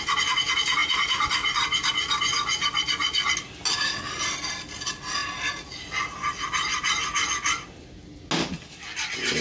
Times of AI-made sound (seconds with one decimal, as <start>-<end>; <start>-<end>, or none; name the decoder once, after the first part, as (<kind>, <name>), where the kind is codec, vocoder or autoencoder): none